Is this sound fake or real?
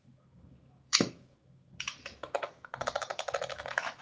fake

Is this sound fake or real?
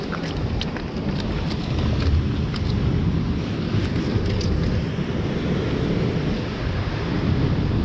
real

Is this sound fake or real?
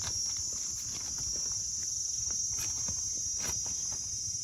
real